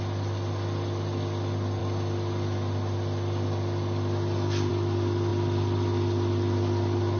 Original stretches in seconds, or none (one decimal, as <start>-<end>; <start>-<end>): 0.0-7.2